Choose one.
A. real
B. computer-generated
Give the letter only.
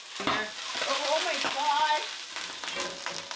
A